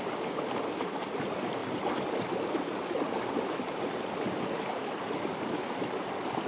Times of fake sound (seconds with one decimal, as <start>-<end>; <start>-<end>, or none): none